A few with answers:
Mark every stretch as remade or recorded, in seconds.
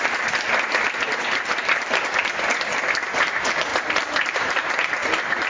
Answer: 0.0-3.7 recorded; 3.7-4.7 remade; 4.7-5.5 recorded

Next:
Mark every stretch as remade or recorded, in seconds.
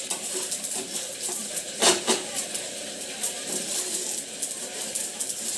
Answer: 0.0-3.7 remade; 3.7-4.9 recorded; 4.9-5.6 remade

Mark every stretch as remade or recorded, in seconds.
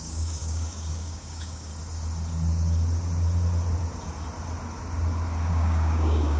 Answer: 0.0-1.7 remade; 1.7-5.5 recorded; 5.5-6.4 remade